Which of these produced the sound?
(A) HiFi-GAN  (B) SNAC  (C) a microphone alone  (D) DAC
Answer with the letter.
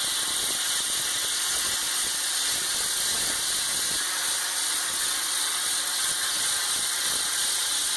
C